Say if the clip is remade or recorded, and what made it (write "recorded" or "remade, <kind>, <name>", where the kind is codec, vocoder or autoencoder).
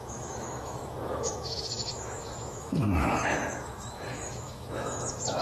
remade, autoencoder, DAC-VAE